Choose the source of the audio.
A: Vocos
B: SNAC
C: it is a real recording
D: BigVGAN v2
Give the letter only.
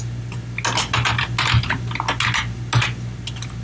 C